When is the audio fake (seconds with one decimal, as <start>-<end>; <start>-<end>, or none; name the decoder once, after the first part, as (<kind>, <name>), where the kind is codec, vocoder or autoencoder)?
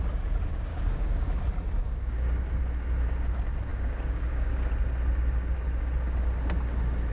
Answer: 0.7-1.4 (codec, DAC); 1.8-2.6; 3.7-4.7